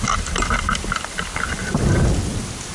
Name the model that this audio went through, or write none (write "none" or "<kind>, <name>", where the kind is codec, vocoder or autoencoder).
none